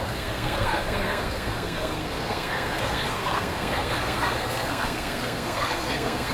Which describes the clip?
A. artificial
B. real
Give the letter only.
A